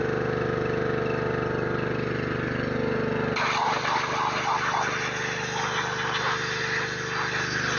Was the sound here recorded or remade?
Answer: recorded